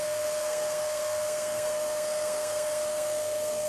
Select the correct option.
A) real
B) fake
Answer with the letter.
B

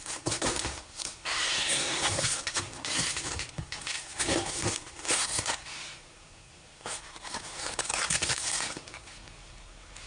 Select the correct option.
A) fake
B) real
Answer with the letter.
A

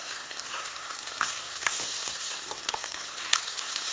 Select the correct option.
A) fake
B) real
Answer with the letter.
A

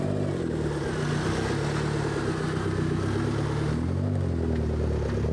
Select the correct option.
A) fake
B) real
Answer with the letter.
B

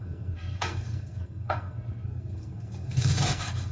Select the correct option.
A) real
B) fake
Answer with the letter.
B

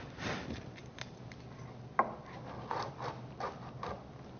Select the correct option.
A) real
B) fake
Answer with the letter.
A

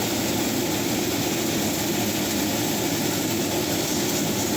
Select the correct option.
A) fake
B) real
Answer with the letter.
B